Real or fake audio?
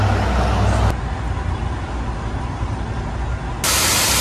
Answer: real